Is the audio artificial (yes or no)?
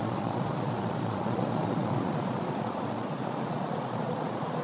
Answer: yes